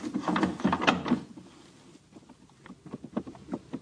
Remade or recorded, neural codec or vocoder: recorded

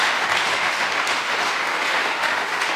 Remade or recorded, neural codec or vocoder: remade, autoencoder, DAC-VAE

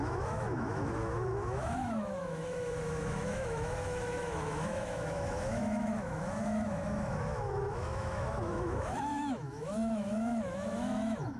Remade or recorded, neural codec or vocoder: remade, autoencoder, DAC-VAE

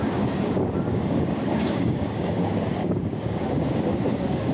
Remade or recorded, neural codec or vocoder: remade, codec, DAC